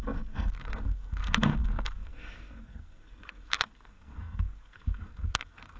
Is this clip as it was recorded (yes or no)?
no